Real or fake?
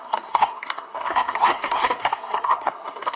fake